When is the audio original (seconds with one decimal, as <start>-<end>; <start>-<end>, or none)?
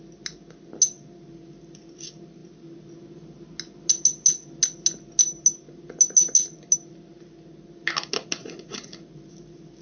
0.0-8.4; 8.9-9.8